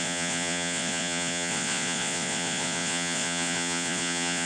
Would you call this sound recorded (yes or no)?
no